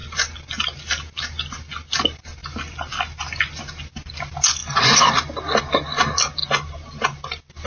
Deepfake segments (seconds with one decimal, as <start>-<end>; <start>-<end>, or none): none